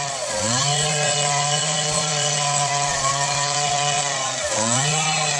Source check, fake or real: fake